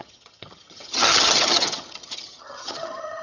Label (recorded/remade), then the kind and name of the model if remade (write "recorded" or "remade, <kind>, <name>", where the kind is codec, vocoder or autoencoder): remade, vocoder, HiFi-GAN